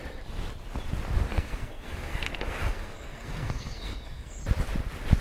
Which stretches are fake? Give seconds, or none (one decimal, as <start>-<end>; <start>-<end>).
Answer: 1.3-4.4